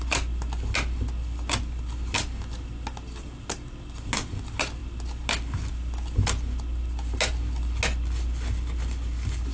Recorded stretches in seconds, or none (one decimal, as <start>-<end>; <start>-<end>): 0.0-9.5